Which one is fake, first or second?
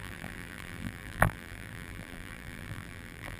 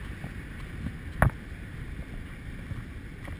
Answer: first